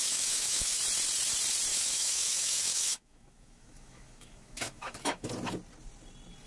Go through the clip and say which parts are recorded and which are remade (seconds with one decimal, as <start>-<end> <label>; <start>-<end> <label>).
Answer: 0.0-0.8 remade; 0.8-1.7 recorded; 1.7-5.3 remade; 5.3-6.5 recorded